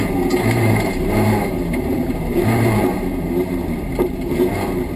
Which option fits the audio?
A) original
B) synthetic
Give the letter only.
B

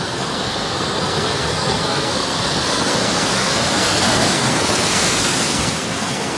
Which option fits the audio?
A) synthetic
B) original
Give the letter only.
A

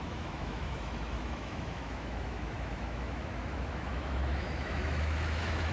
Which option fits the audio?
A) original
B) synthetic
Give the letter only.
B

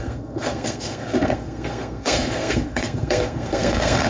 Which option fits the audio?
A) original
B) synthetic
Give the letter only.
B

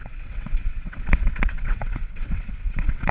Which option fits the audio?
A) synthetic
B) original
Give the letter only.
A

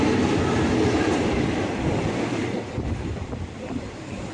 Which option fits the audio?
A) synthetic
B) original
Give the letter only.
A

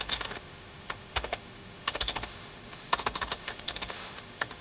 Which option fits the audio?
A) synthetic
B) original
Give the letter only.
A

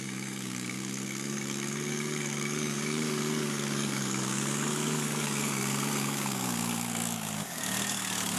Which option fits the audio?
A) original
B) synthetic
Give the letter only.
B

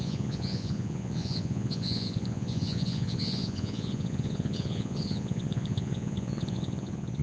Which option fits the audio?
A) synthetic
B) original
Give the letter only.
A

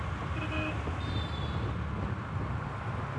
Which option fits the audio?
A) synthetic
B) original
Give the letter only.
B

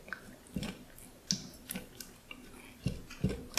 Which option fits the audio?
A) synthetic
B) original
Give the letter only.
B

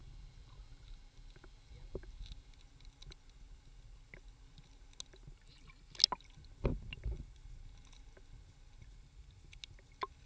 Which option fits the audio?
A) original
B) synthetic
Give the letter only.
A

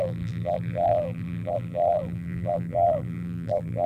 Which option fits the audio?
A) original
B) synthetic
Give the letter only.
B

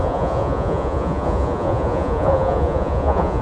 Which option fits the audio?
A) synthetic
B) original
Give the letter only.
A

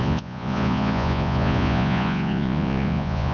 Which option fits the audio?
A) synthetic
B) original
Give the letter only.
A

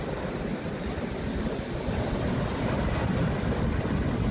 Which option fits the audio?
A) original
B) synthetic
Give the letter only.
A